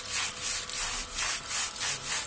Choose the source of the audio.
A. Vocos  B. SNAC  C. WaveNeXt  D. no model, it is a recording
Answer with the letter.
D